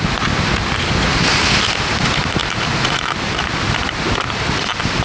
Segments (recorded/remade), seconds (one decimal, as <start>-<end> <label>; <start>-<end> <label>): 0.0-5.0 recorded